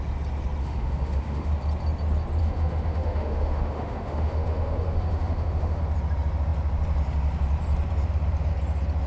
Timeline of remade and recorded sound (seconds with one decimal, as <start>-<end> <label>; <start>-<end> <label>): 0.0-0.6 recorded; 0.6-1.5 remade; 1.5-2.4 recorded; 2.4-5.8 remade; 5.8-9.1 recorded